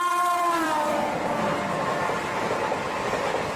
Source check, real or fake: fake